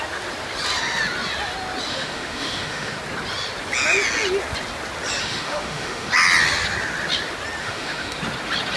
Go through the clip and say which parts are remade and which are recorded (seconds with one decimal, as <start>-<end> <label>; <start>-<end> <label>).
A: 0.0-1.9 recorded; 1.9-3.0 remade; 3.0-5.2 recorded; 5.2-6.1 remade; 6.1-7.6 recorded; 7.6-8.2 remade; 8.2-8.8 recorded